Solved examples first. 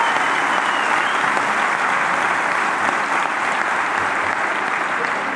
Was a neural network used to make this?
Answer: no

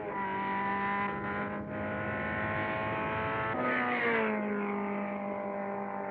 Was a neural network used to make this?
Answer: no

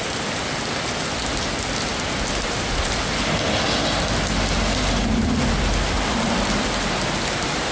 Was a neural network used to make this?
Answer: no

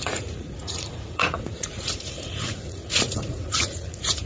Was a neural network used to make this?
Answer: yes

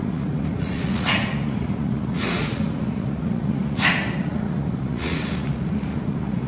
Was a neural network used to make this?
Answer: yes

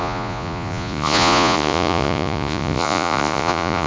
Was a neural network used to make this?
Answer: yes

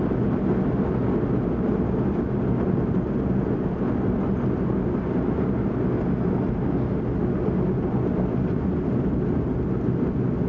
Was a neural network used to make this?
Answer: no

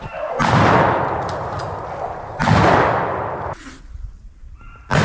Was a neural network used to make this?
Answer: no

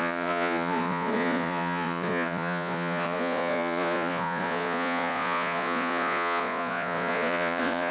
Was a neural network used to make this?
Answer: yes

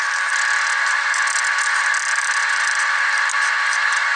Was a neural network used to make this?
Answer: no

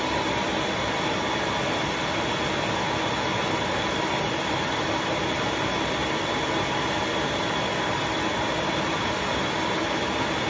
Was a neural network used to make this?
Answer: no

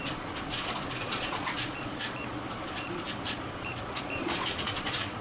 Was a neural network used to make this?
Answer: yes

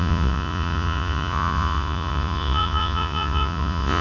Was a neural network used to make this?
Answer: yes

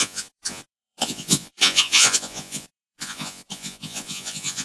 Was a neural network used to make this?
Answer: yes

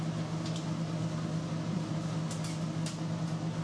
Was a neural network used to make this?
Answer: no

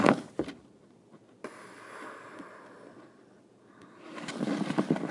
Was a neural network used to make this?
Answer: no